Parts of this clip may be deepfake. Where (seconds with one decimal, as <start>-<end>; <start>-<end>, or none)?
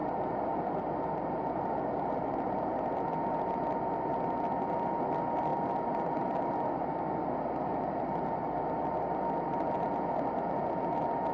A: none